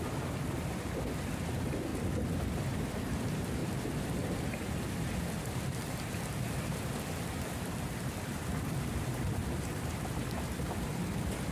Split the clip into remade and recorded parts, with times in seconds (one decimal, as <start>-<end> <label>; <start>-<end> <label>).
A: 0.0-1.9 remade; 1.9-2.5 recorded; 2.5-11.5 remade